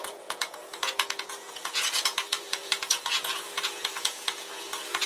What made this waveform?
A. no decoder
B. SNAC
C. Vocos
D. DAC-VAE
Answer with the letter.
C